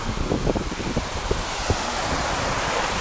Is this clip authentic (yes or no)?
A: yes